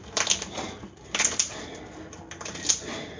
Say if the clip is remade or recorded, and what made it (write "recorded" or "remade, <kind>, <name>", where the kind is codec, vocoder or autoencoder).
recorded